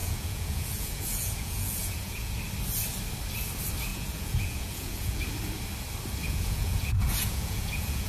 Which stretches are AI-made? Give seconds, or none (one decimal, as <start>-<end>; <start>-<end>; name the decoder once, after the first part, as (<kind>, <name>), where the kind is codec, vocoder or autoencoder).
0.0-2.4 (vocoder, Vocos); 3.9-5.2; 6.2-8.1